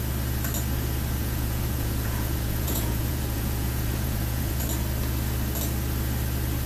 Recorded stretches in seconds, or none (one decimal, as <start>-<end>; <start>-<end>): 0.0-1.2; 4.6-6.7